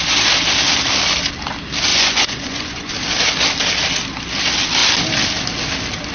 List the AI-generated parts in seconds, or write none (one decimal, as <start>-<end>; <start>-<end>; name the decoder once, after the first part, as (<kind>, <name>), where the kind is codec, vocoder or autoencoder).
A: 1.9-2.9 (vocoder, Vocos)